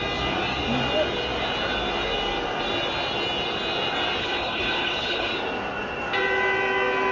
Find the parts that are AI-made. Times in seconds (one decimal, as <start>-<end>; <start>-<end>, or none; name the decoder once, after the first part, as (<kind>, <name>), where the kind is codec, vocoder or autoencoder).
4.2-5.3 (codec, HILCodec)